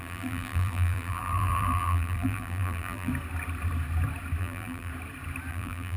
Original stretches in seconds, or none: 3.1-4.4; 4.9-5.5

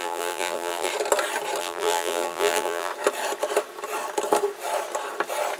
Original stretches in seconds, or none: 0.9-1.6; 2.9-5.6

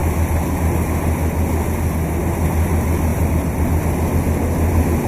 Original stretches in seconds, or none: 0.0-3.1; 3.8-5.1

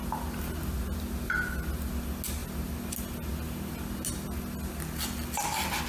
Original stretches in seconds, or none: 0.0-5.9